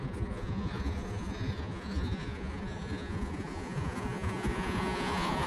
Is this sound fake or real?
fake